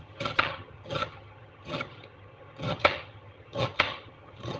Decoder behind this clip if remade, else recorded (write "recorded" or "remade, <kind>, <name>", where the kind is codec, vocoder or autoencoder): remade, vocoder, HiFi-GAN